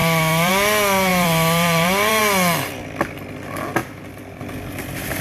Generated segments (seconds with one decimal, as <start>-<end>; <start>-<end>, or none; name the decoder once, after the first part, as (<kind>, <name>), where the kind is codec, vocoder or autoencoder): 0.0-0.5 (vocoder, BigVGAN v2); 1.1-2.2; 3.8-4.4